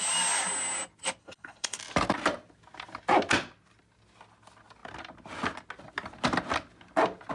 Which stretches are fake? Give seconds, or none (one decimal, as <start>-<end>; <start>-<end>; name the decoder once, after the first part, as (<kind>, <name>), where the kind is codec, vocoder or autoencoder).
1.2-1.8 (codec, HILCodec)